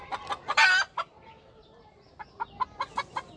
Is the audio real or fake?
real